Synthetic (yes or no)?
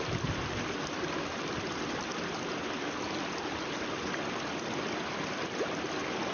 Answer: no